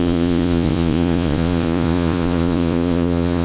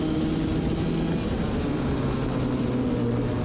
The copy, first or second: first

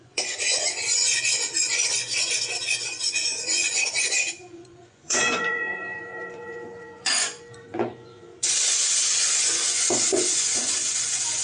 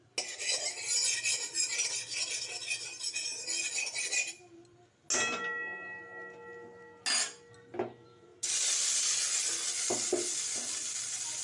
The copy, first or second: first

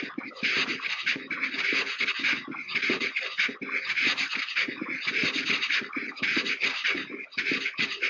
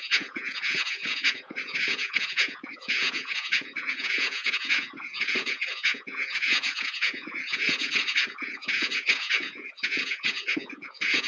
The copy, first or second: second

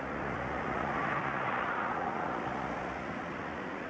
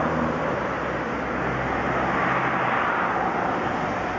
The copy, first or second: first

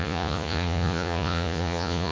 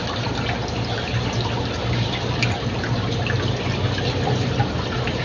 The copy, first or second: first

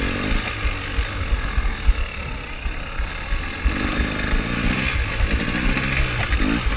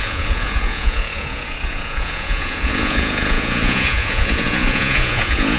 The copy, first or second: second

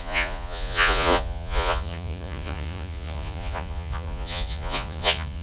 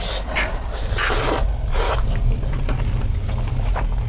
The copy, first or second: first